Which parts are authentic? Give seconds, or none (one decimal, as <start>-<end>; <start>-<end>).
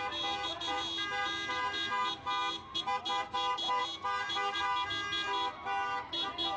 0.0-6.6